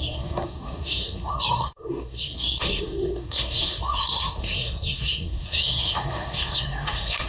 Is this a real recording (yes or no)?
no